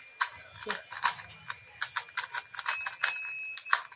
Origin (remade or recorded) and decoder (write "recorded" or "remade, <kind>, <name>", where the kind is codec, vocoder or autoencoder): recorded